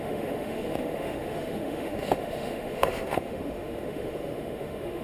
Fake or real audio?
fake